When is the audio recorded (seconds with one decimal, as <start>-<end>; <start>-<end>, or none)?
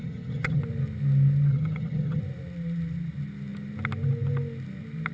0.6-1.5; 2.2-5.1